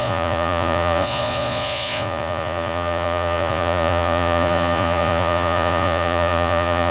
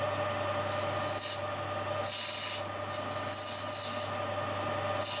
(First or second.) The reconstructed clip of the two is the first